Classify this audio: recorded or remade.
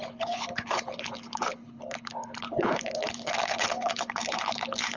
remade